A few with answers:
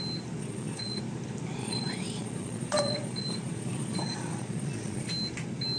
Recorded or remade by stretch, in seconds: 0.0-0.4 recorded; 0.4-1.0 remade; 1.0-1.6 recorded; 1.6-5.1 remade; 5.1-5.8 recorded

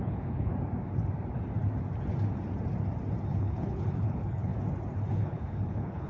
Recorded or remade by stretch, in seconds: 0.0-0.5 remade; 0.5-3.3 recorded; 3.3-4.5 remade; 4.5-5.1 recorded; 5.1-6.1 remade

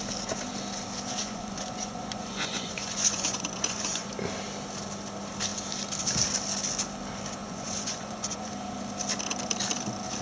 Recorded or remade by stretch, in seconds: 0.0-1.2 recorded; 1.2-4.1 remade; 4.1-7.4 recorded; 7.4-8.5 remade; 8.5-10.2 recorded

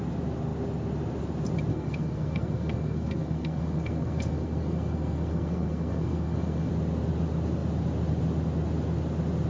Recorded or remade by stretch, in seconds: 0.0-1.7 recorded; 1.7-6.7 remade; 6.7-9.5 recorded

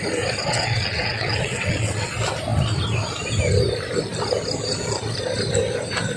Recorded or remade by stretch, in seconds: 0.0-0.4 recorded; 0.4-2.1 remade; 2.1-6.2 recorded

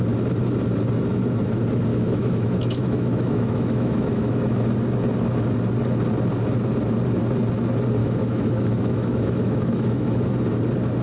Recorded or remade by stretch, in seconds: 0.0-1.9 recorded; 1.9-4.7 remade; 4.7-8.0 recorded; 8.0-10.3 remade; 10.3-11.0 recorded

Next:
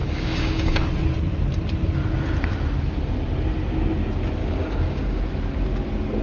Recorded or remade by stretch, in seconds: 0.0-0.8 remade; 0.8-4.4 recorded; 4.4-5.2 remade; 5.2-6.2 recorded